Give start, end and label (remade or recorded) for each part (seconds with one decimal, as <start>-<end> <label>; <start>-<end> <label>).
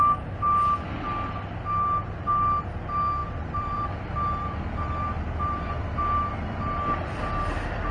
0.0-3.2 recorded; 3.2-5.7 remade; 5.7-7.9 recorded